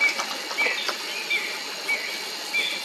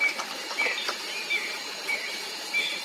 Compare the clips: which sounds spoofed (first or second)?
second